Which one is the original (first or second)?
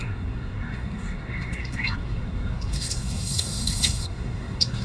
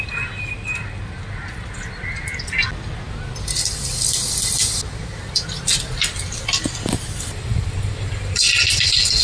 second